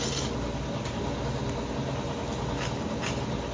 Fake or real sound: real